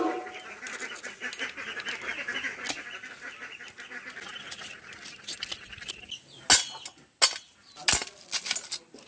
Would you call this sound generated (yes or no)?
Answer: no